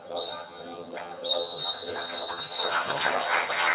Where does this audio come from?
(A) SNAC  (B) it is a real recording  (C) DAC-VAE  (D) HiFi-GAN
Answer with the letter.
D